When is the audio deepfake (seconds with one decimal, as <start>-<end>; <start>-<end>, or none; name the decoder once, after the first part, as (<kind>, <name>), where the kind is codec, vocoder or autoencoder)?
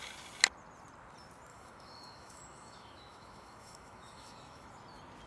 1.5-4.7 (autoencoder, DAC-VAE)